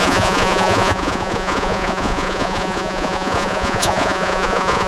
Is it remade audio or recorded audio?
remade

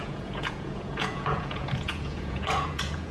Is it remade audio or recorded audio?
remade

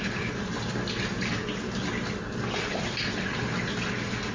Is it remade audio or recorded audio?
recorded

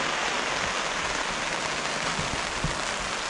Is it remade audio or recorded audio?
recorded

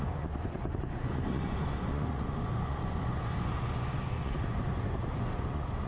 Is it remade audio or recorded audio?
remade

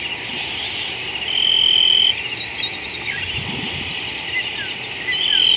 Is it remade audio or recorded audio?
recorded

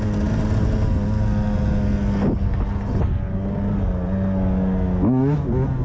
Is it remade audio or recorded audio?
recorded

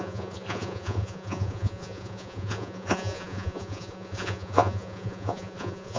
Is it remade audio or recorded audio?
remade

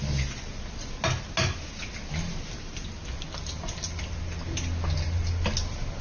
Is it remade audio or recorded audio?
recorded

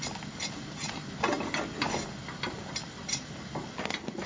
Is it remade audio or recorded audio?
recorded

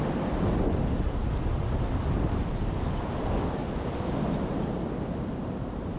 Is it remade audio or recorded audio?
recorded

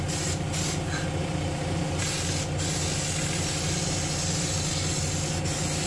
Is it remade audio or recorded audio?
recorded